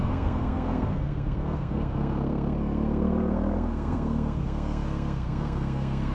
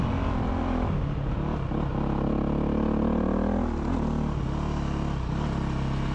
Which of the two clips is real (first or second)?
second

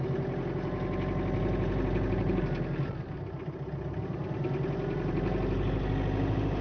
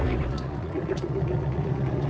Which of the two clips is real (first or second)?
first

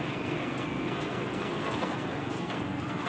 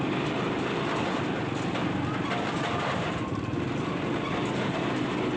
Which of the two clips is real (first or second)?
second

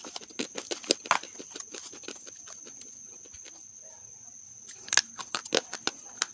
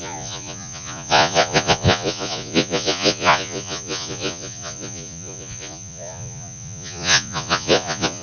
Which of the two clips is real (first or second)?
first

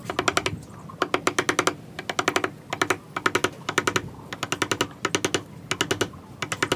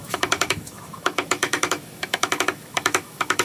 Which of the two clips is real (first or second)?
first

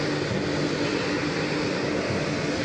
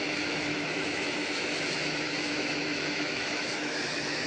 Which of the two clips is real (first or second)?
first